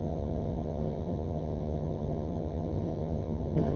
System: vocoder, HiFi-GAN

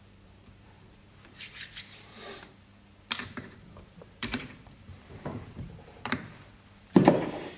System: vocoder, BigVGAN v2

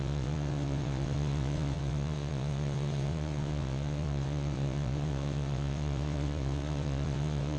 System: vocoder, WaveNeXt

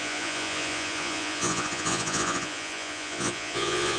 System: vocoder, Vocos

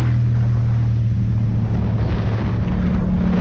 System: none